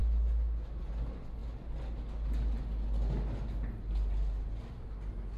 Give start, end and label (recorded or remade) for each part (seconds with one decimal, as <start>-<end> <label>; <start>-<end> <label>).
0.0-5.4 recorded